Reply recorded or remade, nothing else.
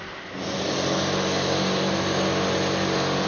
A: recorded